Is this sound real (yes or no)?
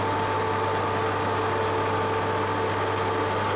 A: yes